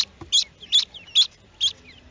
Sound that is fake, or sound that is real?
real